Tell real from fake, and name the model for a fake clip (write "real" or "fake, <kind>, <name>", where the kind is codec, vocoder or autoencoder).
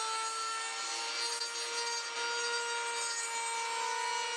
real